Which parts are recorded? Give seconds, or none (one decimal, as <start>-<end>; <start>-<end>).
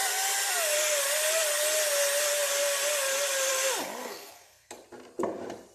0.0-4.0; 4.7-5.7